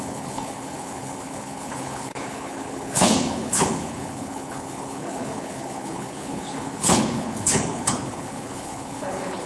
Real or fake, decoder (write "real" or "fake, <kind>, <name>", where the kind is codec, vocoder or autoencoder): fake, codec, HILCodec